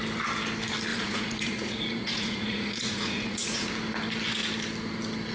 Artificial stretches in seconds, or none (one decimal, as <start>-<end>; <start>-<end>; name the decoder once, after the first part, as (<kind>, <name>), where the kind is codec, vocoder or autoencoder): 0.9-3.7 (vocoder, Vocos)